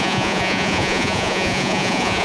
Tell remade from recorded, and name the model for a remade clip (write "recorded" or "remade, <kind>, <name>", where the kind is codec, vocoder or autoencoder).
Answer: remade, vocoder, Vocos